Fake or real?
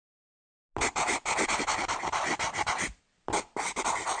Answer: real